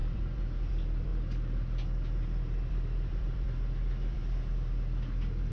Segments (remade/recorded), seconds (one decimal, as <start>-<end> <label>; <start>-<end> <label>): 0.0-1.1 remade; 1.1-2.7 recorded; 2.7-4.2 remade; 4.2-5.5 recorded